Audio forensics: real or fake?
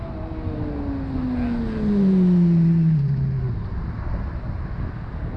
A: real